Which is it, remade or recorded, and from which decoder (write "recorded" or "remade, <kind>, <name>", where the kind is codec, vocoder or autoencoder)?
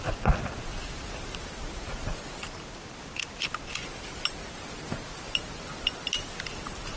recorded